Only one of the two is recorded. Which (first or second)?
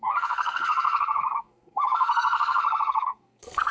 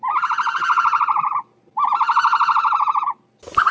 second